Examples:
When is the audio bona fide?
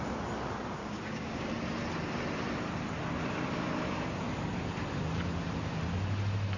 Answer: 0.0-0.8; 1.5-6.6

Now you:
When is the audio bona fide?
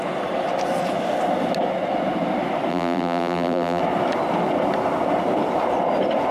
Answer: 0.0-2.7; 3.8-6.3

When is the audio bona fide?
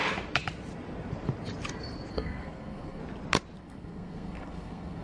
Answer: 0.0-2.1; 3.0-3.6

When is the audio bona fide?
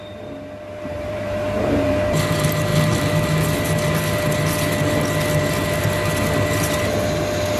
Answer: 0.0-0.9; 1.9-7.6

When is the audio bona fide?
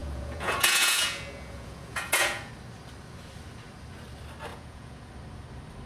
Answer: 2.5-4.5; 5.1-5.9